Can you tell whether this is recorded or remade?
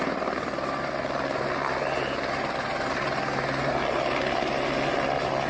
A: recorded